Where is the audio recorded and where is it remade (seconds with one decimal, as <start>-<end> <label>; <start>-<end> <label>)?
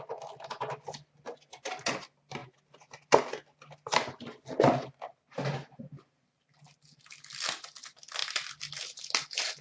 0.0-9.6 recorded